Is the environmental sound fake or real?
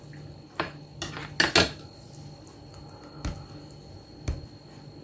real